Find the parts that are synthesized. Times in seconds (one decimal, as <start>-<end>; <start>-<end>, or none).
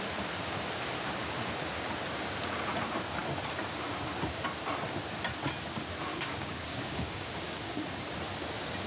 6.1-8.0